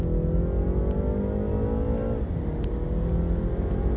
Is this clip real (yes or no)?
yes